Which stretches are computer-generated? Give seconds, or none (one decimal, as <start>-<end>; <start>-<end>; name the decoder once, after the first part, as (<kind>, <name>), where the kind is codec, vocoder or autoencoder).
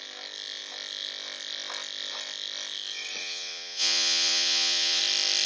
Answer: 3.2-5.0 (vocoder, Vocos)